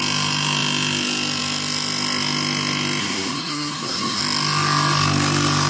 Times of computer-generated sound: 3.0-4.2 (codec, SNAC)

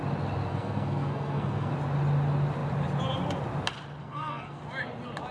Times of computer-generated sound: 0.5-1.7 (codec, SNAC); 4.0-4.6